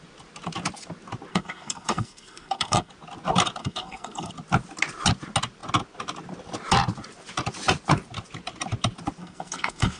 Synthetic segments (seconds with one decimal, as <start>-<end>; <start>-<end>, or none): 1.3-2.9; 3.6-4.3; 9.2-10.0